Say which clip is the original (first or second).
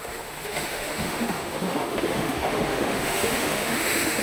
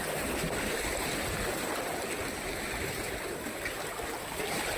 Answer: second